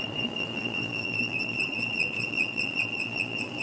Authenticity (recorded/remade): remade